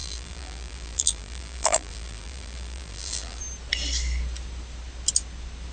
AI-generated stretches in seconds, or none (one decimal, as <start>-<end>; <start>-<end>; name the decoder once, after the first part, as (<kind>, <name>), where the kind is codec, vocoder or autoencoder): 0.0-3.4 (vocoder, BigVGAN v2)